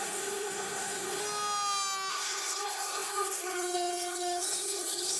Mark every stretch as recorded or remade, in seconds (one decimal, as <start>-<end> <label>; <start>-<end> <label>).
0.0-1.2 remade; 1.2-2.1 recorded; 2.1-5.2 remade